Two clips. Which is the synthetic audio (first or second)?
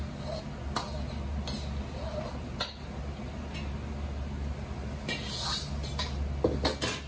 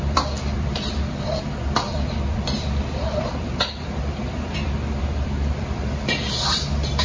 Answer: second